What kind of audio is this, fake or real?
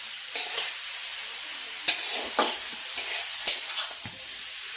real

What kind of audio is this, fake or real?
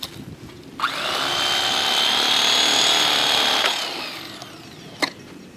real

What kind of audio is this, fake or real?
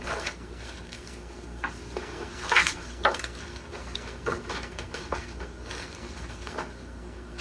fake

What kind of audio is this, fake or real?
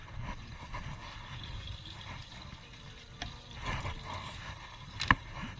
real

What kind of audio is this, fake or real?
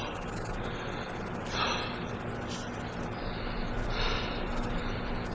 real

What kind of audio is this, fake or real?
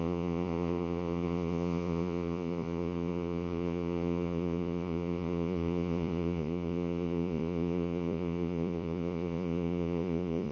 fake